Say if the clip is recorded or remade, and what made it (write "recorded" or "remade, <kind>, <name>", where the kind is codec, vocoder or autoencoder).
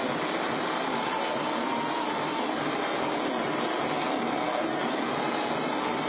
recorded